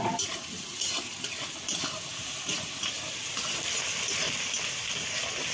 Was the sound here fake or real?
real